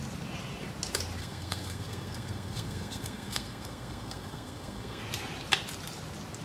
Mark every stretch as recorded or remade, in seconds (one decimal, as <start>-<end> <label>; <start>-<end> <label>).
0.0-1.2 recorded; 1.2-5.0 remade; 5.0-6.4 recorded